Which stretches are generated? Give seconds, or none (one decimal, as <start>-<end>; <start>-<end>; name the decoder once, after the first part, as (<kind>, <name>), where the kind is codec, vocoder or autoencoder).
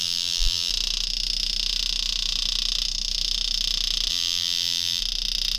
0.0-0.7 (vocoder, BigVGAN v2); 4.1-5.0